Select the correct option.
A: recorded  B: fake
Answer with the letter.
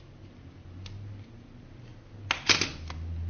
A